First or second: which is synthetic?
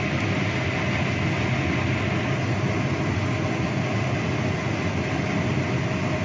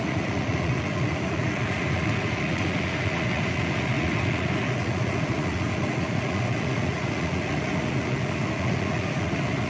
second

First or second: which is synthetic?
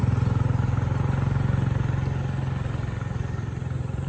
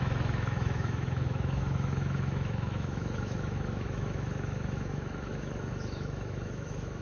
second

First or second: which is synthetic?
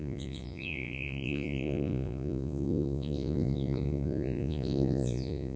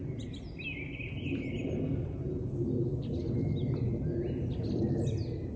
first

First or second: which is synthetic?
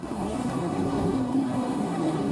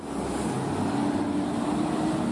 first